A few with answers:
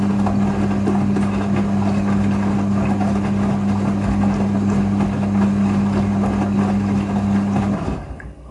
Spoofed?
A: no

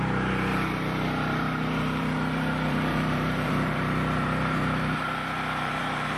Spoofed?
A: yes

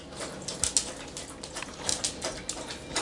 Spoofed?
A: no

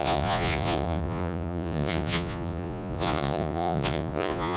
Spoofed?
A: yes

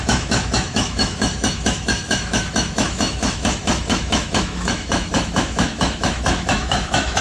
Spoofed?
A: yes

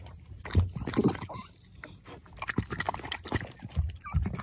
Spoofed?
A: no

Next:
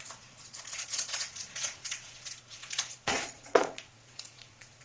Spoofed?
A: yes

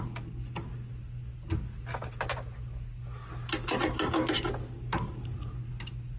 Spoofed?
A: no